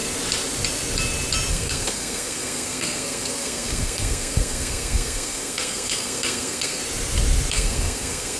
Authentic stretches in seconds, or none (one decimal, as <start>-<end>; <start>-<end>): 0.0-1.5; 6.8-7.5

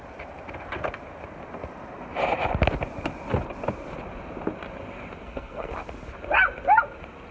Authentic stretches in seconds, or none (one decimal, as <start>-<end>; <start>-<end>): 0.0-5.2; 5.7-7.3

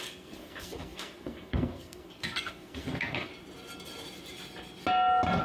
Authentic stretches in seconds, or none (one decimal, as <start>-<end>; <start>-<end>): 3.3-5.4

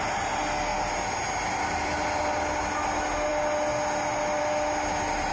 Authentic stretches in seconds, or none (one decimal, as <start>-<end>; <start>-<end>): 0.0-5.3

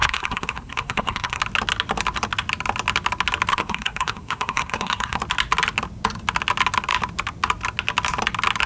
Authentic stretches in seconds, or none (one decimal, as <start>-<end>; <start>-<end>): 1.4-3.5; 5.2-8.7

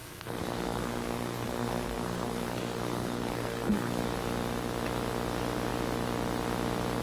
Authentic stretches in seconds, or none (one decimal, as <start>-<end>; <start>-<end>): 4.0-7.0